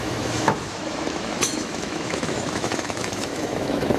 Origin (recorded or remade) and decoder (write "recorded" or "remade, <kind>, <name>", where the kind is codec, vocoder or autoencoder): remade, autoencoder, DAC-VAE